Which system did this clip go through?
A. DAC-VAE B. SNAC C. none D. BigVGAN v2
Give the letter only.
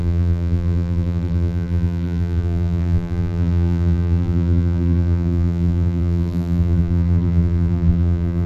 D